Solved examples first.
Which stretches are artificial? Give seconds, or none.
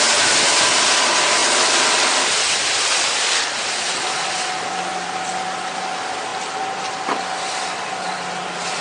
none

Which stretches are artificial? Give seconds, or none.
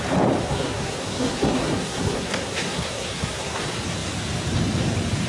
0.4-3.6